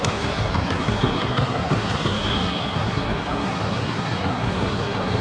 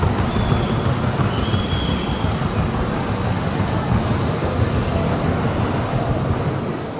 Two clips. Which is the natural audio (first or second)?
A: second